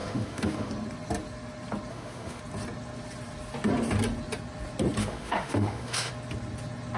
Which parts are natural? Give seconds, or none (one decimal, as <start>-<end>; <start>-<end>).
0.7-1.9; 2.4-5.0; 6.1-7.0